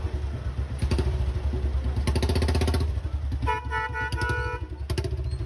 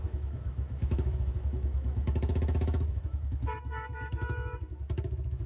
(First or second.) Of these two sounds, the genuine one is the first